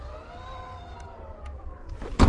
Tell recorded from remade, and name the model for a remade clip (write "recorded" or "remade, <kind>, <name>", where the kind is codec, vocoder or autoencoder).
recorded